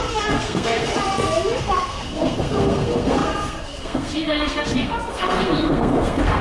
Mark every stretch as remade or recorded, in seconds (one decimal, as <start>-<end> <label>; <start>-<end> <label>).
0.0-0.9 remade; 0.9-1.6 recorded; 1.6-6.4 remade